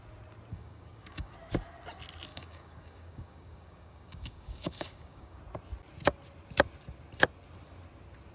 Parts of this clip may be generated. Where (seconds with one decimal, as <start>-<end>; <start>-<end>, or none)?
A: 0.5-1.3; 2.3-5.4